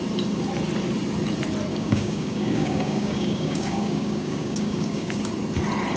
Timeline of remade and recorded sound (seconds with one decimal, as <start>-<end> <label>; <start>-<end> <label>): 0.0-1.7 recorded; 1.7-5.3 remade; 5.3-6.0 recorded